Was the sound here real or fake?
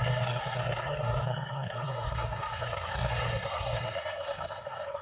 fake